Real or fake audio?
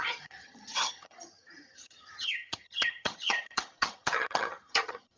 fake